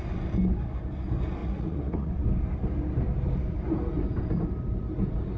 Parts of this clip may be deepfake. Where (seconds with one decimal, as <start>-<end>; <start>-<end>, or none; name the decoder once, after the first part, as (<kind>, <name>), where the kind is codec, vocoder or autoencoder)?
1.4-2.1 (vocoder, Vocos)